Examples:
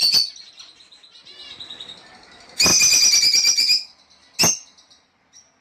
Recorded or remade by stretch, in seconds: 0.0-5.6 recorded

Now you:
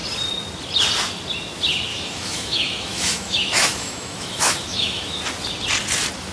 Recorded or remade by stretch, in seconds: 0.0-1.9 recorded; 1.9-5.2 remade; 5.2-6.3 recorded

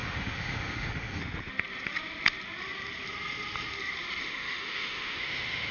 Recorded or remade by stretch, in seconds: 0.0-1.2 remade; 1.2-4.2 recorded; 4.2-5.7 remade

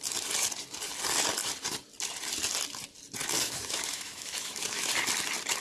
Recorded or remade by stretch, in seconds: 0.0-3.2 recorded; 3.2-4.9 remade; 4.9-5.6 recorded

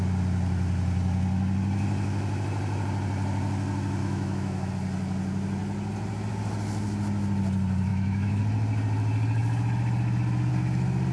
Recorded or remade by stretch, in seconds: 0.0-4.0 recorded; 4.0-4.7 remade; 4.7-7.9 recorded; 7.9-8.4 remade; 8.4-11.1 recorded

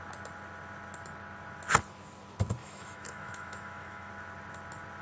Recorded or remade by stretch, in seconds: 0.0-2.6 recorded; 2.6-4.1 remade; 4.1-5.0 recorded